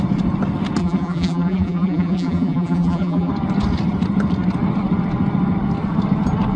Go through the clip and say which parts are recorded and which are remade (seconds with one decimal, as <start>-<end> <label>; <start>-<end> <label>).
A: 0.0-0.8 recorded; 0.8-3.3 remade; 3.3-6.6 recorded